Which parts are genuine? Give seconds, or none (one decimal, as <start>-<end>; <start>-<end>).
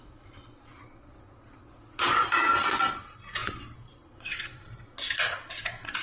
none